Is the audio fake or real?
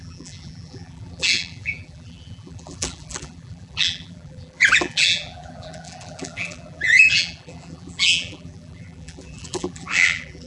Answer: fake